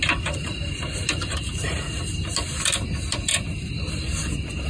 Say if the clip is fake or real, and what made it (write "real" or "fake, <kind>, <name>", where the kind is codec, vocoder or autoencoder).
real